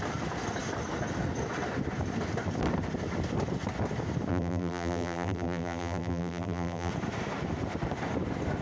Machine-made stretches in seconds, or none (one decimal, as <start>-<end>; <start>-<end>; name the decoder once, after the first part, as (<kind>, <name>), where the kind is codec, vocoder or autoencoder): 4.3-6.9 (vocoder, BigVGAN v2)